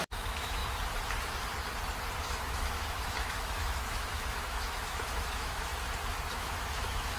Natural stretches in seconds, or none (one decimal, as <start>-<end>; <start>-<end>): 0.6-2.2; 5.7-6.4

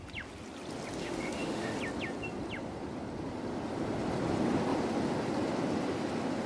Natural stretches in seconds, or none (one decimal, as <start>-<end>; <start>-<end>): 0.0-1.0; 1.8-6.5

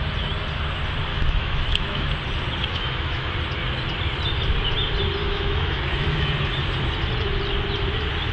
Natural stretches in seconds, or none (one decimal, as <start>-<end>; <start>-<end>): 0.0-1.1; 2.1-2.7; 3.3-5.2; 6.3-8.3

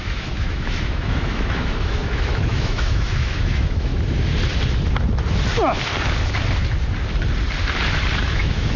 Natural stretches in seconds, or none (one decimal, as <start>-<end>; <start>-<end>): 3.9-8.2

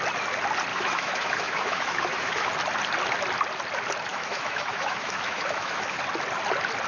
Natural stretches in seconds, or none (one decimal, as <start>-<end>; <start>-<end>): 0.0-0.7; 2.5-4.1; 6.0-6.9

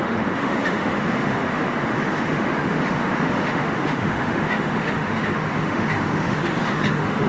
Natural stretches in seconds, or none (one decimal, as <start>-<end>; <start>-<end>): none